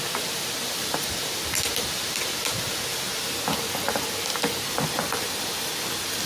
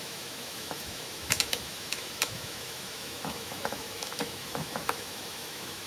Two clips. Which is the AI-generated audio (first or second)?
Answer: second